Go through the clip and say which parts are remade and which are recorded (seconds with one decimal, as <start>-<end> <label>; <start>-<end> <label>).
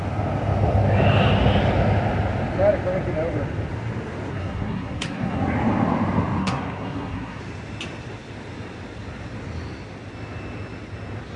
0.0-4.3 recorded; 4.3-5.4 remade; 5.4-6.4 recorded; 6.4-7.4 remade; 7.4-11.4 recorded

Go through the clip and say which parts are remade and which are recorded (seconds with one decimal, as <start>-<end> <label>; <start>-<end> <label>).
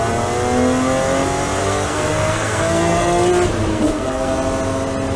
0.0-1.6 recorded; 1.6-3.3 remade; 3.3-3.7 recorded; 3.7-4.3 remade; 4.3-5.2 recorded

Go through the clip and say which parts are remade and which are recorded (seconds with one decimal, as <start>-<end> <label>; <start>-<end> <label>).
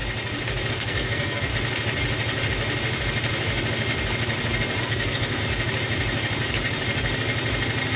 0.0-0.7 recorded; 0.7-1.5 remade; 1.5-4.8 recorded; 4.8-5.4 remade; 5.4-8.0 recorded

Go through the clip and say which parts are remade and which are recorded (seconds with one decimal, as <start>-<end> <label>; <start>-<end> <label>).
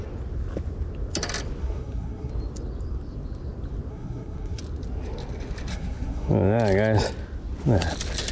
0.0-1.6 recorded; 1.6-2.3 remade; 2.3-3.9 recorded; 3.9-4.6 remade; 4.6-5.7 recorded; 5.7-6.3 remade; 6.3-8.3 recorded